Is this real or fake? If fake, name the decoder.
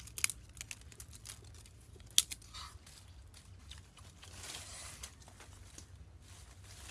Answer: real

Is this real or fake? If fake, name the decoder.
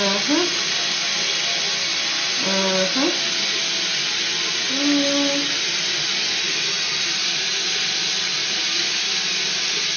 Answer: real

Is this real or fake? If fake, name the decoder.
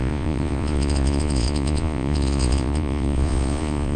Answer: fake, vocoder, Vocos